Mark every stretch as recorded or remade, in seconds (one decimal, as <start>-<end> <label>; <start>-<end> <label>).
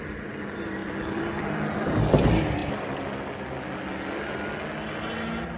0.0-0.8 recorded; 0.8-1.5 remade; 1.5-5.6 recorded